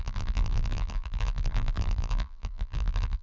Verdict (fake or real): fake